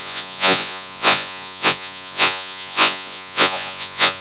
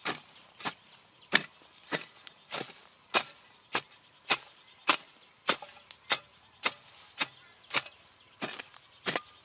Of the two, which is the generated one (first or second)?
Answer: first